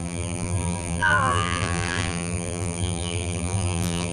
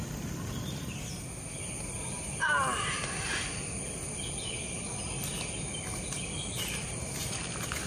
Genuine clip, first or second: second